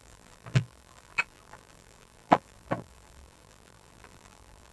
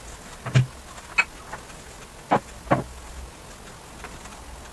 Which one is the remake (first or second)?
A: first